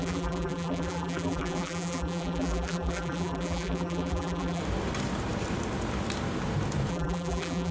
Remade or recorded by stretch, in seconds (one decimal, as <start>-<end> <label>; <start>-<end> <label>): 0.0-4.6 remade; 4.6-6.9 recorded; 6.9-7.7 remade